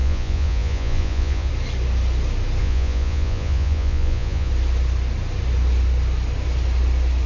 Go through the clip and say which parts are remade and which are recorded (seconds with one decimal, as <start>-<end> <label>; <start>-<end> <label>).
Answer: 0.0-1.5 remade; 1.5-2.6 recorded; 2.6-4.5 remade; 4.5-7.3 recorded